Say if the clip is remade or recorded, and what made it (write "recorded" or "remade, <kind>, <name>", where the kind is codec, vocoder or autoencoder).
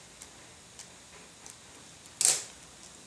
recorded